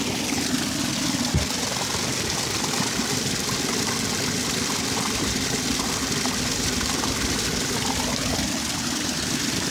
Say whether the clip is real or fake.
real